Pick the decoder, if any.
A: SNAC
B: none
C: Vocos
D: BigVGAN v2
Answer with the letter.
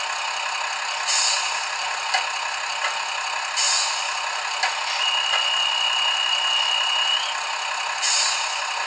B